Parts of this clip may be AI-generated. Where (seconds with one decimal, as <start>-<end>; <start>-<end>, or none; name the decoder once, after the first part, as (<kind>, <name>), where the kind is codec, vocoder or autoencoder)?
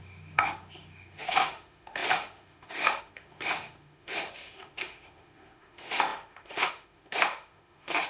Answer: 0.0-8.1 (autoencoder, DAC-VAE)